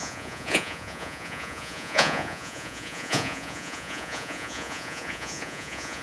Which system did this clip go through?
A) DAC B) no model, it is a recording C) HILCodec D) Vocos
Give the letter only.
D